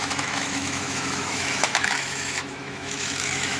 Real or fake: fake